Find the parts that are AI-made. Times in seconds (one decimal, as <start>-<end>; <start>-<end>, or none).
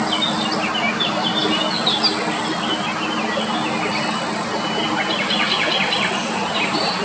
6.2-7.0